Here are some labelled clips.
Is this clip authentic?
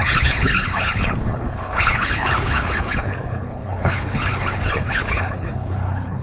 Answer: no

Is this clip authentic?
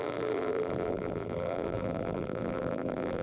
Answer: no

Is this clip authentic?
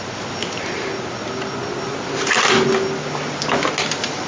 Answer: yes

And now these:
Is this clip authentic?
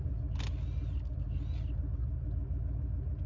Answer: yes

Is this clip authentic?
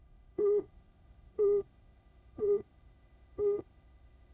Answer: no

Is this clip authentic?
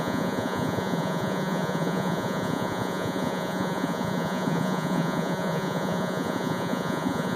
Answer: no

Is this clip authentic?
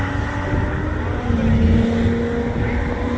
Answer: yes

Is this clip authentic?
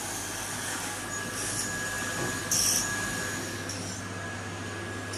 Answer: yes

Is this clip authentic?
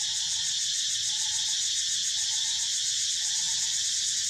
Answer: yes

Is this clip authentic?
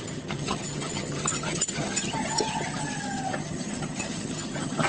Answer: no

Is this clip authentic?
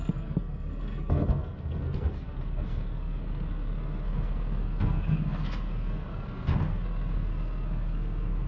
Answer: no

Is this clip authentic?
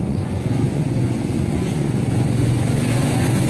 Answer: no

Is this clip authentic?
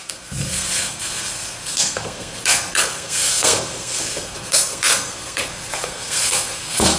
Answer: no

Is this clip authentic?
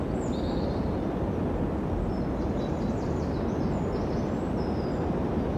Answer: yes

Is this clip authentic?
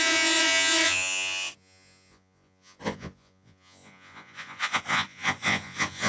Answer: no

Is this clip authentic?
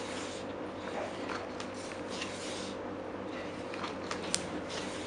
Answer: yes